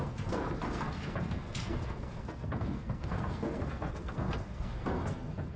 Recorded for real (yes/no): no